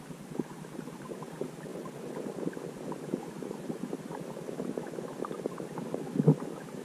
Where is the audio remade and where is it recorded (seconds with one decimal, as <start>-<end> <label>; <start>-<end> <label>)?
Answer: 0.0-6.8 recorded